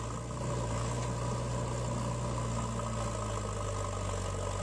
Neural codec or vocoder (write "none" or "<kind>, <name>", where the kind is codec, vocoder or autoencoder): none